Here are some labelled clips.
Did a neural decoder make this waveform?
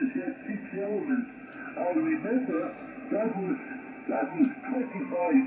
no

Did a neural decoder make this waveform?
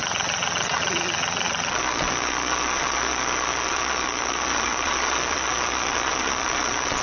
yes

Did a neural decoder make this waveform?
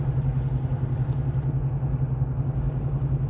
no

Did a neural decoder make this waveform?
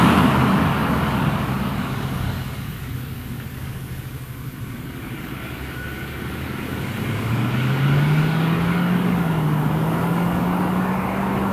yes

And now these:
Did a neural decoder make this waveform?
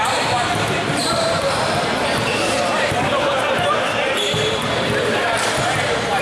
yes